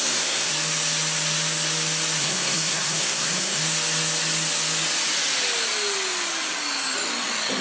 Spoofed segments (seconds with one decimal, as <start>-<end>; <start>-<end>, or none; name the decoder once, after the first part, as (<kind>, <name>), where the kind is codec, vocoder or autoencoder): 0.0-0.5 (codec, SNAC); 2.2-3.6